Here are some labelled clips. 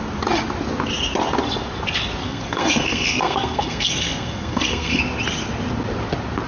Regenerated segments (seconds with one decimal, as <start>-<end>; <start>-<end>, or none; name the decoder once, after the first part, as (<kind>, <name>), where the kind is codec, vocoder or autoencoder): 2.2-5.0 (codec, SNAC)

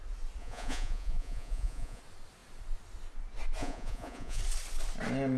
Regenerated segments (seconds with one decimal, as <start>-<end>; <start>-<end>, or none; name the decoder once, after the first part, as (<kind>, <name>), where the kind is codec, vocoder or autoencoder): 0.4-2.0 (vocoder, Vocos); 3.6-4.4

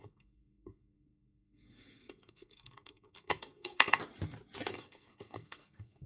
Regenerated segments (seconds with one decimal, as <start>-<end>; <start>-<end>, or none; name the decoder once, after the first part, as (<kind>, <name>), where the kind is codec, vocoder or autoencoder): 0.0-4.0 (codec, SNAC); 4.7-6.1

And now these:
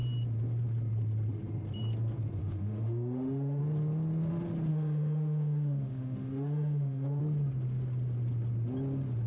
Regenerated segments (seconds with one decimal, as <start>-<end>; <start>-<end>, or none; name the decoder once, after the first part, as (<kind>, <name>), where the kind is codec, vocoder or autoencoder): 2.4-3.6 (autoencoder, DAC-VAE); 4.7-7.2